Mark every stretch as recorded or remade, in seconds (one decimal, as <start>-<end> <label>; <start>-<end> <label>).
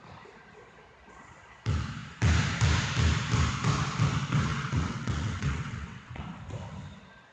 0.0-4.5 recorded; 4.5-6.2 remade; 6.2-7.3 recorded